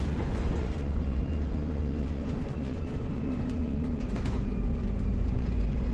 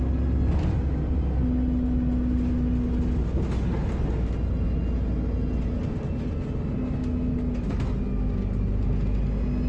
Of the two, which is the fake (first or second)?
first